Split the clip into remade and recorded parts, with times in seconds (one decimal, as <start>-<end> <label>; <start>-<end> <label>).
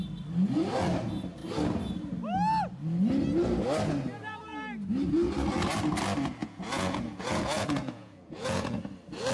0.0-6.4 recorded; 6.4-8.8 remade; 8.8-9.3 recorded